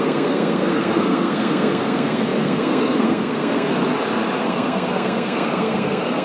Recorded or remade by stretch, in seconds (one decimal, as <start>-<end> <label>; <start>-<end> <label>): 0.0-3.7 remade; 3.7-4.4 recorded; 4.4-6.2 remade